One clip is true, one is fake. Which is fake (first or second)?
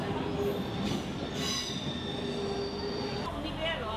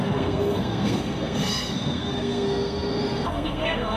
second